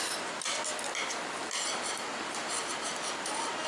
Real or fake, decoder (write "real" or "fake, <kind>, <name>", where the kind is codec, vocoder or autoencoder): real